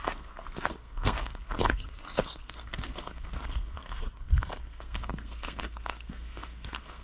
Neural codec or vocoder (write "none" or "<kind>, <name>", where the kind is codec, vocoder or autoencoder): codec, SNAC